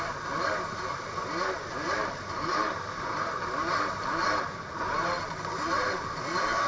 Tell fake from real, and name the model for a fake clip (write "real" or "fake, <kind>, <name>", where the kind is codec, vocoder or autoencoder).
fake, vocoder, BigVGAN v2